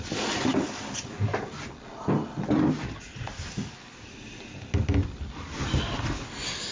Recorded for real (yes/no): yes